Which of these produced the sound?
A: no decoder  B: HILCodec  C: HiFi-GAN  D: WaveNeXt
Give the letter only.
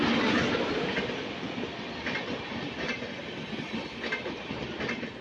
A